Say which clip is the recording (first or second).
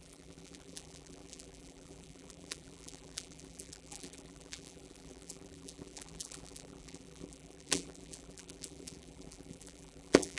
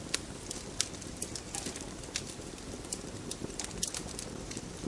second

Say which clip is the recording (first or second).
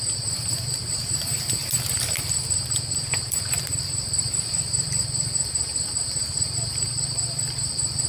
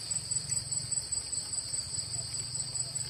second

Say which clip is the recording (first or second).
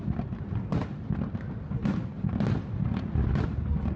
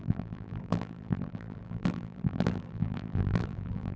first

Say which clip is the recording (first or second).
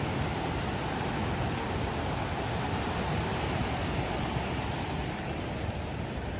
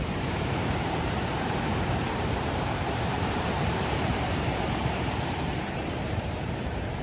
first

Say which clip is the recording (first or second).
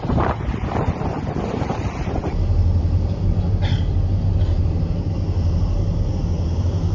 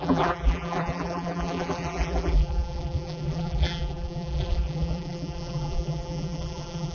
first